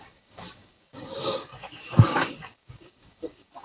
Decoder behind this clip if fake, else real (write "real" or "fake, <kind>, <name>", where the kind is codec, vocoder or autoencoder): fake, codec, DAC